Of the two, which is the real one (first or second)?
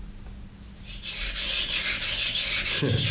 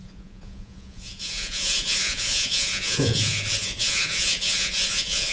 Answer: first